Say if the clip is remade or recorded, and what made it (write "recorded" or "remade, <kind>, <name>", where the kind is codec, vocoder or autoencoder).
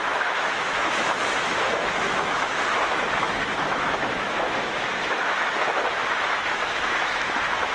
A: remade, autoencoder, DAC-VAE